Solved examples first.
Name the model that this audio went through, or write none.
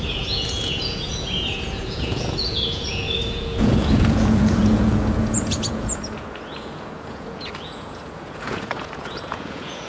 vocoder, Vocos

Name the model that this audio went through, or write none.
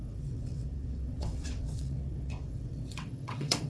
vocoder, WaveNeXt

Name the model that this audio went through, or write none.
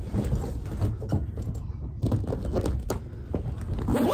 none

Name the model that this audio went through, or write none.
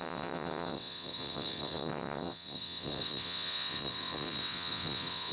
vocoder, WaveNeXt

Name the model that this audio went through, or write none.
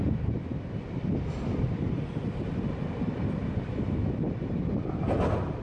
none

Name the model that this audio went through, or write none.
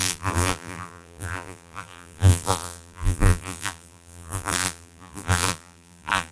vocoder, BigVGAN v2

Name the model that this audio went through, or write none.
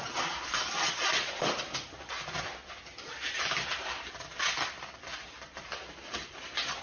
none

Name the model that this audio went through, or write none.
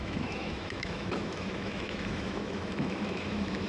autoencoder, DAC-VAE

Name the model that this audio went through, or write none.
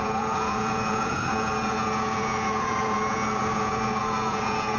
vocoder, Vocos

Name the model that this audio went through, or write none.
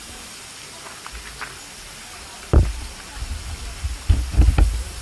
none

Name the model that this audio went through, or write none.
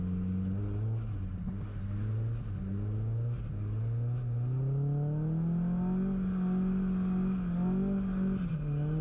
none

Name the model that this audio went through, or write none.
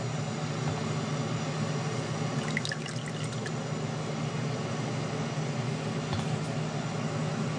none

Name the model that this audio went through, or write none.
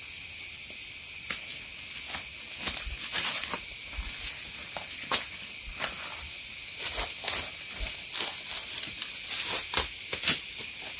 none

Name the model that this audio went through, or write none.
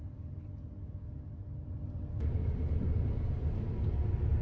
none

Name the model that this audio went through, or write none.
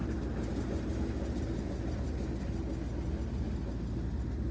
none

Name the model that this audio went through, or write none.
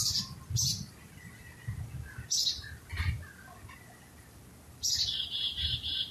none